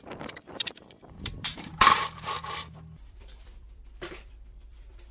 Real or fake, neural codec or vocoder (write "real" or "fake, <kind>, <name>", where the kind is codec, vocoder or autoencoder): fake, vocoder, BigVGAN v2